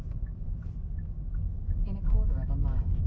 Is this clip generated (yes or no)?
no